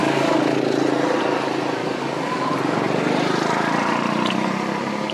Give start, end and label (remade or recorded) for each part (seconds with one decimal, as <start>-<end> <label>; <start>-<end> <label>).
0.0-0.6 remade; 0.6-1.8 recorded; 1.8-2.5 remade; 2.5-5.1 recorded